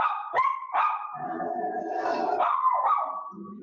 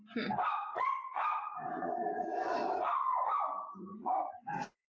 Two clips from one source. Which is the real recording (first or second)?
first